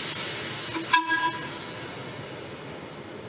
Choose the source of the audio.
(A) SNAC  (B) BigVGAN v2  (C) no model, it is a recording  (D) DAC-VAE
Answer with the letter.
C